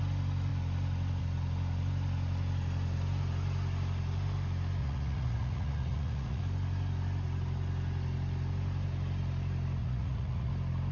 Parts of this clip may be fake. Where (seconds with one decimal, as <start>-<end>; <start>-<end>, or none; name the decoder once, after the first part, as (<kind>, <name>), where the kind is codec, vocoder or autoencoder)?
4.8-6.4 (vocoder, Vocos); 9.8-10.5